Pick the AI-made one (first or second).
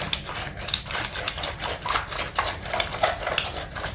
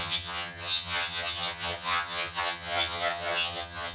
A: second